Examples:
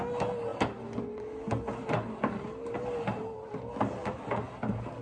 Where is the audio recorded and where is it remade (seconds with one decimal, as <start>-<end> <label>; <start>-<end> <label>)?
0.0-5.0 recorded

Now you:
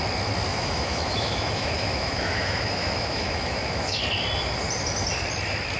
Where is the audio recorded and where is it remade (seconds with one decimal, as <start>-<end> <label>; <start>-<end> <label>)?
0.0-0.5 recorded; 0.5-4.0 remade; 4.0-5.8 recorded

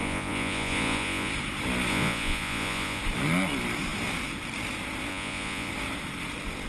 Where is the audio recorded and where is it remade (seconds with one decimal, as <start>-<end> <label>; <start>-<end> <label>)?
0.0-1.3 remade; 1.3-1.9 recorded; 1.9-3.0 remade; 3.0-5.1 recorded; 5.1-5.7 remade; 5.7-6.7 recorded

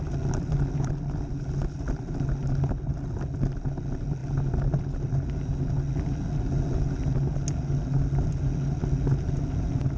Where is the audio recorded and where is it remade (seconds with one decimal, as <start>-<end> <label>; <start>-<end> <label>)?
0.0-10.0 recorded

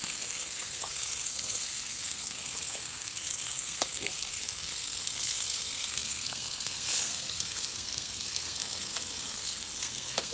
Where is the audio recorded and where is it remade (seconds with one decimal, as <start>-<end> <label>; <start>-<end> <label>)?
0.0-10.3 remade

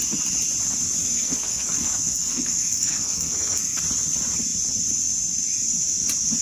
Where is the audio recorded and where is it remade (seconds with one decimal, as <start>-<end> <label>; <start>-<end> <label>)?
0.0-1.0 recorded; 1.0-3.8 remade; 3.8-6.4 recorded